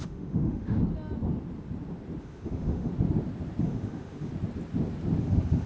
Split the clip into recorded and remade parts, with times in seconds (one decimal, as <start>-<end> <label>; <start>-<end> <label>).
0.0-0.8 remade; 0.8-2.2 recorded; 2.2-2.9 remade; 2.9-3.6 recorded; 3.6-4.3 remade; 4.3-5.2 recorded; 5.2-5.7 remade